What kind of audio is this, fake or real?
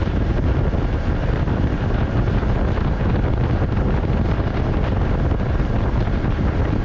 real